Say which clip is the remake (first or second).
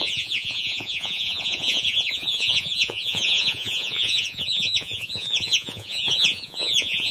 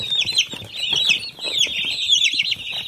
first